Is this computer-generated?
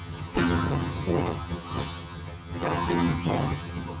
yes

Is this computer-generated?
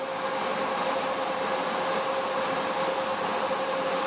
no